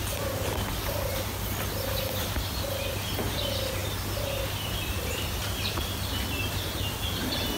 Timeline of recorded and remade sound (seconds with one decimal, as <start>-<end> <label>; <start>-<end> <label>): 0.0-7.6 recorded